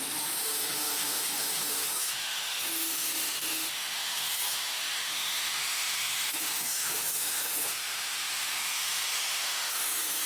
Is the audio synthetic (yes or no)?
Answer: yes